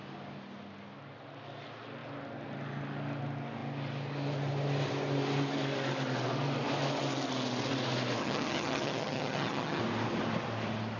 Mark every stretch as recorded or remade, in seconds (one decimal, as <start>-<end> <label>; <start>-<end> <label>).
0.0-8.2 recorded; 8.2-9.8 remade; 9.8-11.0 recorded